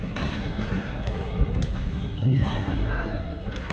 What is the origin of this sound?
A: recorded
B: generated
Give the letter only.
B